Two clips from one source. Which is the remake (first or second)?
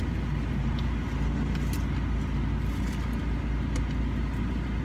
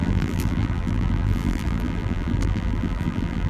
second